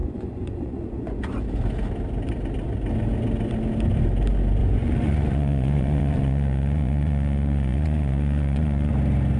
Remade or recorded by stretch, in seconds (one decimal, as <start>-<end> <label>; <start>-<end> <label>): 0.0-1.2 remade; 1.2-4.6 recorded; 4.6-8.9 remade; 8.9-9.4 recorded